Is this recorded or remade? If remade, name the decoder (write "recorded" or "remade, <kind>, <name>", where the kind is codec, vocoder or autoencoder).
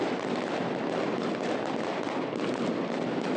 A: recorded